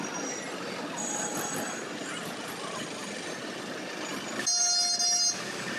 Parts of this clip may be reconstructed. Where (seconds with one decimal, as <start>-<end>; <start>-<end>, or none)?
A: none